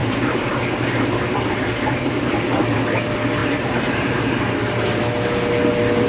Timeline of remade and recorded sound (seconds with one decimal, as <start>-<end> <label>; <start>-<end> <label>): 0.0-2.6 remade; 2.6-3.4 recorded; 3.4-4.4 remade; 4.4-6.1 recorded